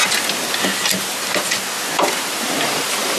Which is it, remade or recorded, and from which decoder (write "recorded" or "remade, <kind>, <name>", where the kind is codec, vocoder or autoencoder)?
recorded